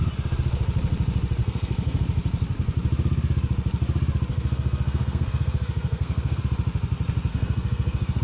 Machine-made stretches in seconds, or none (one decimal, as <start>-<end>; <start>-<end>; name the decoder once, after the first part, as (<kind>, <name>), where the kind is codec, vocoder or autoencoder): 1.4-2.0 (codec, SNAC); 4.3-6.4; 7.3-8.2